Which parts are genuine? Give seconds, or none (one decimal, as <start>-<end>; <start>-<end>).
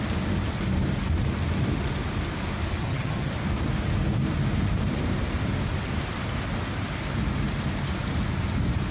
0.0-2.8; 3.3-8.9